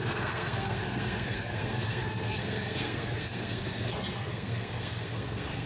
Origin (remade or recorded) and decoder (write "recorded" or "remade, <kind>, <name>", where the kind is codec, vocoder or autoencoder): remade, codec, SNAC